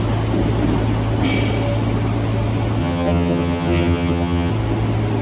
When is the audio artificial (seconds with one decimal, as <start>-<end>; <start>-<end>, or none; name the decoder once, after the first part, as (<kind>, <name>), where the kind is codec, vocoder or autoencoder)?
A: 2.8-4.5 (vocoder, HiFi-GAN)